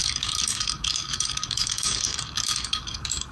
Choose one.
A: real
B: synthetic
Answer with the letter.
B